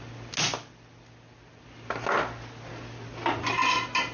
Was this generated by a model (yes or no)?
no